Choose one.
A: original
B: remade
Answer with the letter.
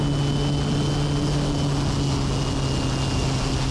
A